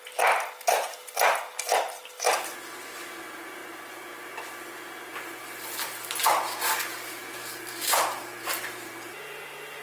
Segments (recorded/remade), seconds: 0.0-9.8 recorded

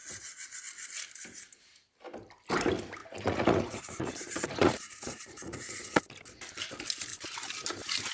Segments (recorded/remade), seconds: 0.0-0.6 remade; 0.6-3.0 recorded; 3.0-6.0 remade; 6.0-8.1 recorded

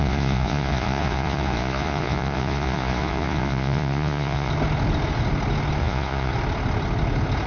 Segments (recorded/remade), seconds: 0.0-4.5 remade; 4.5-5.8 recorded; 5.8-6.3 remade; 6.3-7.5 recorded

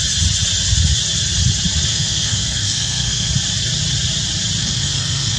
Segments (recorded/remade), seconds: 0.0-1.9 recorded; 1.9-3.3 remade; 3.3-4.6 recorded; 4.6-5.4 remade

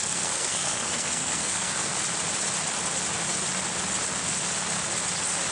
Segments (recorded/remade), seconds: 0.0-1.9 remade; 1.9-5.5 recorded

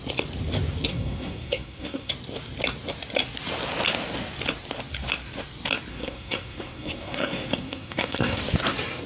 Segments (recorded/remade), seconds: 0.0-0.9 recorded; 0.9-2.1 remade; 2.1-5.9 recorded; 5.9-8.4 remade; 8.4-9.1 recorded